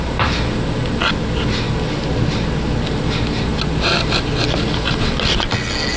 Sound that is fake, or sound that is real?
real